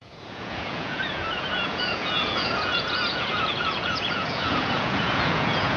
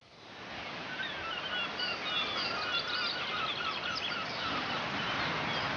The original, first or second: second